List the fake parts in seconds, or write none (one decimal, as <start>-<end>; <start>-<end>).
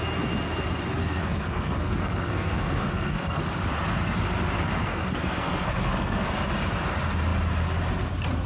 1.0-3.4; 4.8-6.3